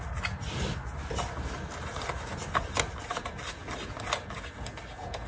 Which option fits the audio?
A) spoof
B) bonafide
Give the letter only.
B